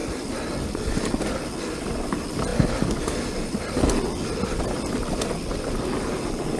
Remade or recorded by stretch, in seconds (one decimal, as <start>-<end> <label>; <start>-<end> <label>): 0.0-6.6 recorded